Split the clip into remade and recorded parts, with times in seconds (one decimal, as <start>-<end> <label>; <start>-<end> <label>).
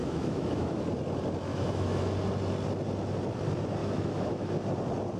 0.0-0.8 remade; 0.8-1.5 recorded; 1.5-2.1 remade; 2.1-3.8 recorded; 3.8-4.5 remade; 4.5-5.2 recorded